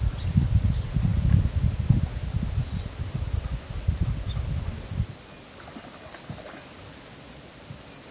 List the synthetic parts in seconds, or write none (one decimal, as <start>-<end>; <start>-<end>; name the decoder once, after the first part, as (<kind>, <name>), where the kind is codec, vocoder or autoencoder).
none